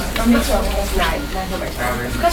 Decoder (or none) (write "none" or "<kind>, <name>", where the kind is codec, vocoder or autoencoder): none